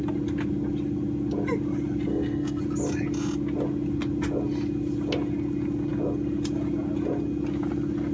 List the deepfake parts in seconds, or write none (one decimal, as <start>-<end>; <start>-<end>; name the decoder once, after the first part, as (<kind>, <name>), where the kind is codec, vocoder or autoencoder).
2.1-2.6 (codec, SNAC)